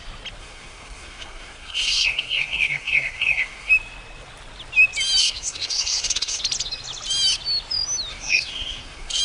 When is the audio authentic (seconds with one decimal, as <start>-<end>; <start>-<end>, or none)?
0.0-0.4; 3.7-5.2; 6.4-8.1